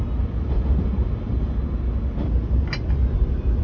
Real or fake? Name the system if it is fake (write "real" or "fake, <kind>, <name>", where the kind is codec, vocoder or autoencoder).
real